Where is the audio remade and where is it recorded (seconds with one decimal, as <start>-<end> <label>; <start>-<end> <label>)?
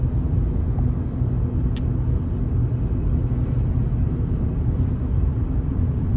0.0-4.4 recorded; 4.4-6.2 remade